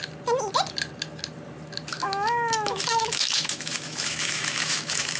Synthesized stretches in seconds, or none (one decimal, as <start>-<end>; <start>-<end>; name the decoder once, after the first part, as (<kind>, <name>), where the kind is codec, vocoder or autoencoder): 1.9-5.2 (autoencoder, DAC-VAE)